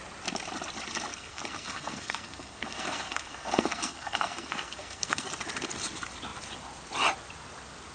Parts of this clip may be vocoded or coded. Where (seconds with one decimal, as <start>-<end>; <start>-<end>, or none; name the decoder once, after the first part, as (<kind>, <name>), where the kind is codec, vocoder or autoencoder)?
1.1-5.3 (codec, SNAC)